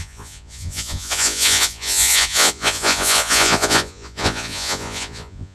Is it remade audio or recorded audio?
remade